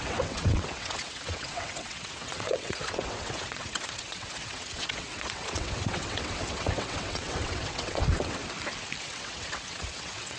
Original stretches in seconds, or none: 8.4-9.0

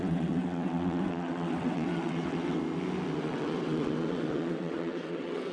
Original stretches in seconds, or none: 2.6-3.2

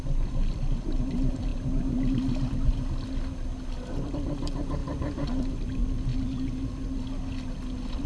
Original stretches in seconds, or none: 0.0-8.1

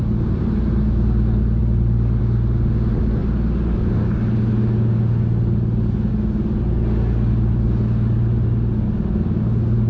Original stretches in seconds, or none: 0.0-9.9